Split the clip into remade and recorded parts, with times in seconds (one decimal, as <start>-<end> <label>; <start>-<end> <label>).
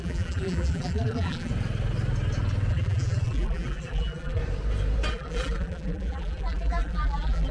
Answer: 0.0-1.5 remade; 1.5-2.7 recorded; 2.7-4.4 remade; 4.4-5.1 recorded; 5.1-7.5 remade